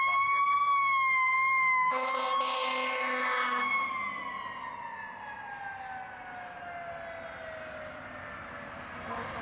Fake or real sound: real